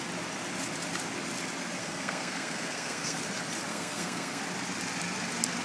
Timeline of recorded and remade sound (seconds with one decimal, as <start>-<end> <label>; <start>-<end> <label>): 0.0-1.8 recorded; 1.8-3.2 remade; 3.2-3.7 recorded; 3.7-4.4 remade; 4.4-5.6 recorded